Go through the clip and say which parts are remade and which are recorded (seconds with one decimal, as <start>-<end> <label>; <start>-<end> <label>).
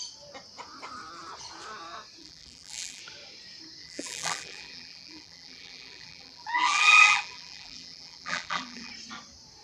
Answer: 0.0-2.2 recorded; 2.2-3.0 remade; 3.0-3.8 recorded; 3.8-8.9 remade; 8.9-9.6 recorded